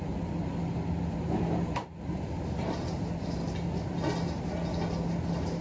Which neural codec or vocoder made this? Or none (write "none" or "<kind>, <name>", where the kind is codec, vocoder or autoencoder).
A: none